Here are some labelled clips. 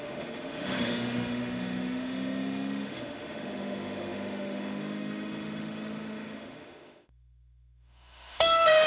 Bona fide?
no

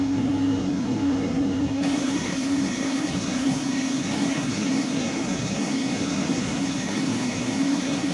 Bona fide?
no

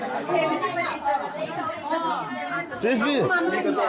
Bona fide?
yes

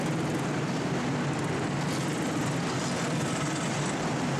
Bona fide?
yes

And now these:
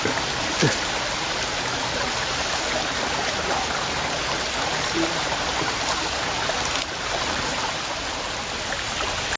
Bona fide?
yes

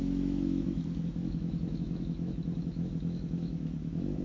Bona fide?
no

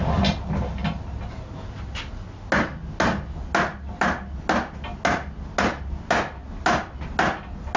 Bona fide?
yes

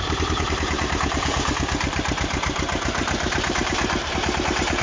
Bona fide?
no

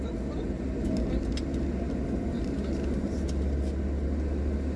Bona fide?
yes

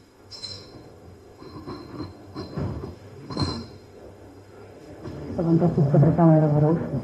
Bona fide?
no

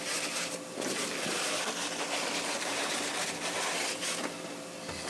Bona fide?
yes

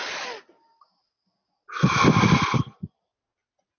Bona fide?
yes